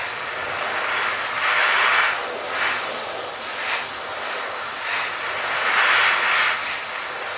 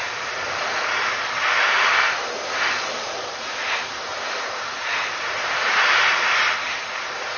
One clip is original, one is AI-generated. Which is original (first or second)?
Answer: first